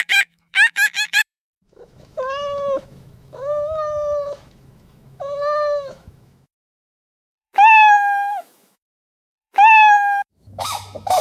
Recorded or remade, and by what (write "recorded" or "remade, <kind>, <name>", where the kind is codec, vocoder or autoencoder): remade, autoencoder, DAC-VAE